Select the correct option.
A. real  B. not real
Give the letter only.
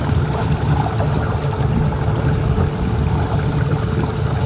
A